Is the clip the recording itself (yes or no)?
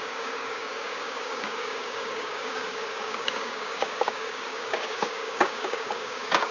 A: no